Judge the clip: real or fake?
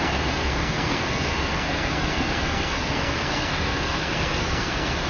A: fake